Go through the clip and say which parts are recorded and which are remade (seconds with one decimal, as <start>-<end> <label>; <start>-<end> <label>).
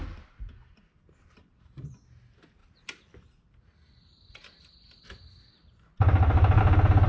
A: 0.0-7.1 recorded